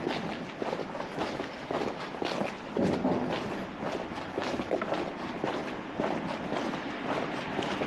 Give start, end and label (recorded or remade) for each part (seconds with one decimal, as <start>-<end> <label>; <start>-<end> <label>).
0.0-0.8 recorded; 0.8-2.0 remade; 2.0-4.0 recorded; 4.0-4.8 remade; 4.8-7.9 recorded